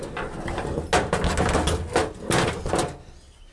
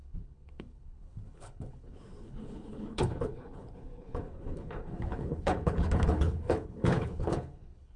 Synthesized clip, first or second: second